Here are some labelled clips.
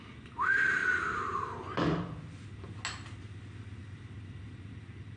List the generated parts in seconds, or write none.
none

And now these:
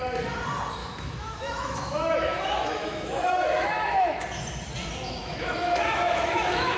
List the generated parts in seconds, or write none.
0.8-4.2 (autoencoder, DAC-VAE); 5.2-6.8

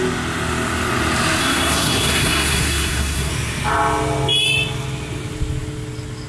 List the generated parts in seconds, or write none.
1.4-3.3 (codec, SNAC)

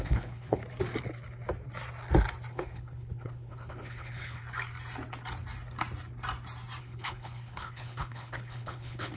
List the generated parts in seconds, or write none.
0.0-0.6 (codec, HILCodec); 2.5-4.4; 6.8-9.2

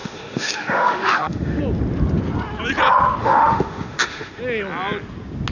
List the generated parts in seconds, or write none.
0.0-1.6 (autoencoder, DAC-VAE); 3.2-4.4